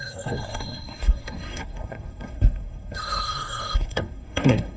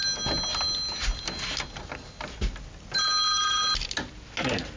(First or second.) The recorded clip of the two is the second